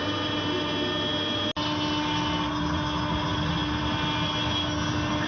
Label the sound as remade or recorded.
recorded